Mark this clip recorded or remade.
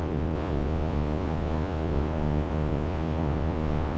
remade